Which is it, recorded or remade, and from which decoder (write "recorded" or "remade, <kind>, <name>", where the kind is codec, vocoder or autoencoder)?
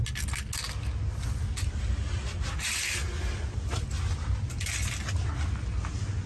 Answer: recorded